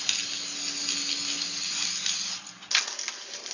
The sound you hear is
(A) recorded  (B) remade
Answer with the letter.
A